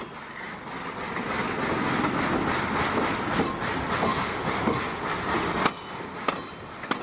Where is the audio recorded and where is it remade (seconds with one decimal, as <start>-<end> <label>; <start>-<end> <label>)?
0.0-7.0 recorded